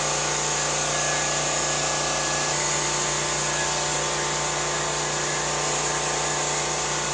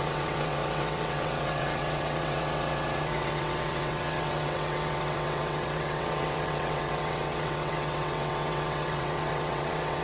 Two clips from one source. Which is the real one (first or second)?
first